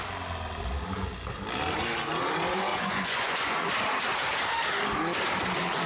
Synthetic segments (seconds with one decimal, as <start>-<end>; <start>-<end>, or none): 2.7-3.7